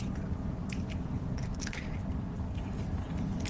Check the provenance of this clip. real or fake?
real